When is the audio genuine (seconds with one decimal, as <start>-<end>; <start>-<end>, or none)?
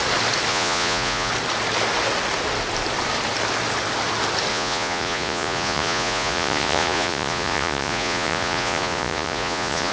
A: 0.0-0.5; 1.3-4.5